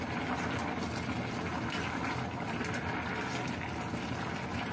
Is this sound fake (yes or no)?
no